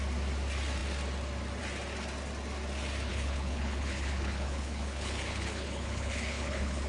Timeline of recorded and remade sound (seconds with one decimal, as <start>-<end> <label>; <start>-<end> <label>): 0.0-3.1 recorded; 3.1-6.9 remade